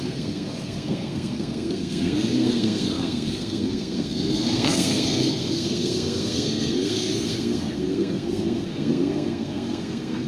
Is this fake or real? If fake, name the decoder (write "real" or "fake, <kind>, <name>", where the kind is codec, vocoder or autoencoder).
fake, codec, SNAC